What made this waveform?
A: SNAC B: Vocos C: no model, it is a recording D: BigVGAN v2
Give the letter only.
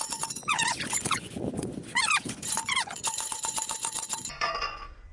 B